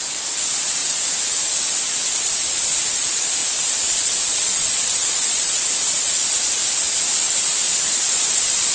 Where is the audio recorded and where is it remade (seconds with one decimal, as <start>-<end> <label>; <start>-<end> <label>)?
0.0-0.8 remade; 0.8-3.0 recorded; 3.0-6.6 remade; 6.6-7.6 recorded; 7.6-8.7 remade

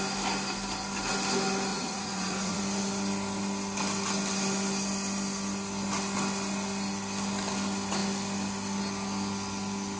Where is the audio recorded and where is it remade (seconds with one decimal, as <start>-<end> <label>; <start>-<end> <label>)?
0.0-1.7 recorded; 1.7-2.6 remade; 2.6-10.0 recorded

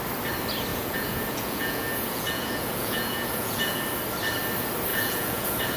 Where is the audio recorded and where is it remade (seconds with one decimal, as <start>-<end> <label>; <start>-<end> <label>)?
0.0-0.7 recorded; 0.7-3.8 remade; 3.8-4.9 recorded; 4.9-5.8 remade

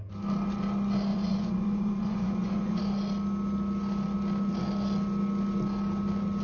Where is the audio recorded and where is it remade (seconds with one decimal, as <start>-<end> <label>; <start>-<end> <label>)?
0.0-1.1 recorded; 1.1-2.8 remade; 2.8-6.4 recorded

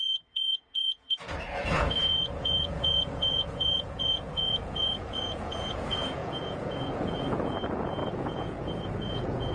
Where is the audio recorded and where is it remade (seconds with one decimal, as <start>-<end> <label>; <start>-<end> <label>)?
0.0-9.5 remade

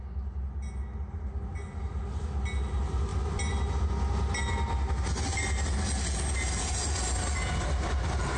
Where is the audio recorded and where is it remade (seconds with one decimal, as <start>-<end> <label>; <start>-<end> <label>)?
0.0-8.4 recorded